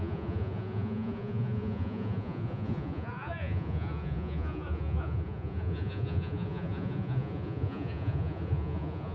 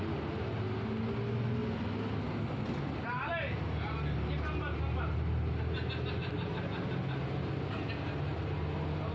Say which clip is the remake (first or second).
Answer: first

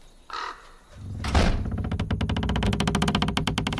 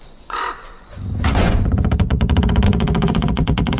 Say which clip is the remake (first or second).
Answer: second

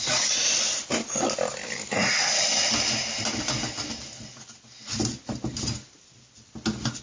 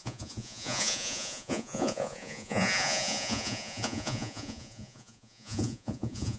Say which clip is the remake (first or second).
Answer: second